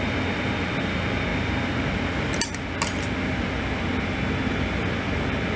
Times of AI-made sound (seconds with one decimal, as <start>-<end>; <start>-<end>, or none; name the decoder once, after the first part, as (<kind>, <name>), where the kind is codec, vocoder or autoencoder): none